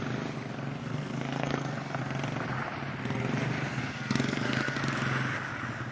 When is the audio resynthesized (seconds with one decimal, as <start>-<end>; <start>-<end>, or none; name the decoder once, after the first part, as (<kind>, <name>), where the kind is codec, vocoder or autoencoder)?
0.8-2.0 (codec, SNAC); 3.7-4.8